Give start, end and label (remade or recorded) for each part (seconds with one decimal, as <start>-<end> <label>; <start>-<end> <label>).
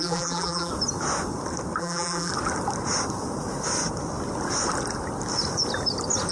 0.0-0.7 remade; 0.7-1.8 recorded; 1.8-2.3 remade; 2.3-6.3 recorded